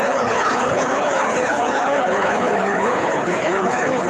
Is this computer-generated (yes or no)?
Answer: yes